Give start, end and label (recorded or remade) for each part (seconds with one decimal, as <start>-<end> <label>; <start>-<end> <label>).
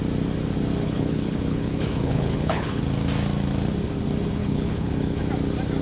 0.0-0.8 recorded; 0.8-2.8 remade; 2.8-4.4 recorded; 4.4-5.2 remade; 5.2-5.8 recorded